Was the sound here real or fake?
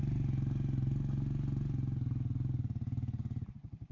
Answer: real